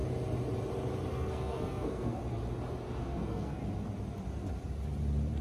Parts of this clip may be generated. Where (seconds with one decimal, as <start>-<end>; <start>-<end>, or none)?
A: 1.1-2.2; 3.0-3.6

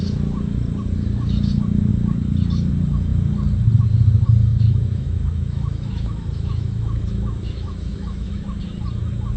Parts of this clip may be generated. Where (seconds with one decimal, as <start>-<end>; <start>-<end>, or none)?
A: 4.5-8.6

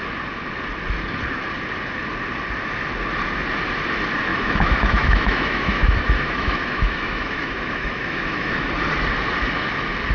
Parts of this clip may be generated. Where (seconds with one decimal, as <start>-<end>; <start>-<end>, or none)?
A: 4.3-8.7

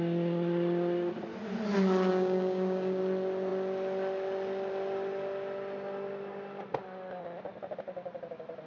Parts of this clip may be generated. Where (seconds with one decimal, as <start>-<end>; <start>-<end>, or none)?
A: 2.1-3.0

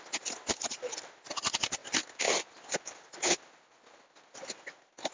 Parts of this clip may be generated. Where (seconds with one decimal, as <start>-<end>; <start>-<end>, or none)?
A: none